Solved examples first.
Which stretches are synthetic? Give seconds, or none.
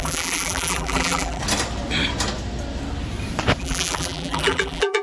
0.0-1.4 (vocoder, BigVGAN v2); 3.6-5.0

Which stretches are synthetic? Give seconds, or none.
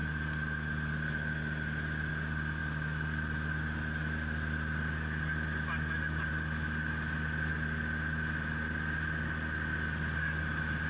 none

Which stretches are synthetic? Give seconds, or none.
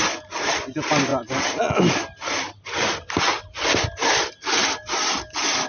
none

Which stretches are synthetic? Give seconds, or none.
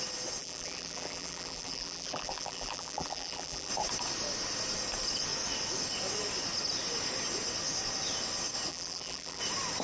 0.4-3.7 (vocoder, BigVGAN v2); 8.7-9.4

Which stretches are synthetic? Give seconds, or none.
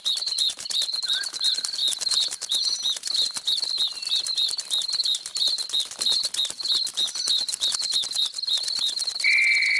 none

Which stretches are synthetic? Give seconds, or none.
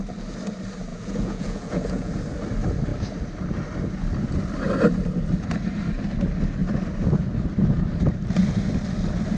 0.9-2.1 (vocoder, Vocos)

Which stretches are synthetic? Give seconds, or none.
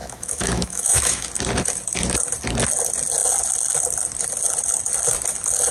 0.0-1.3 (autoencoder, DAC-VAE)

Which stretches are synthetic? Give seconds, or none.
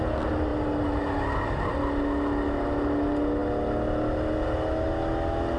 none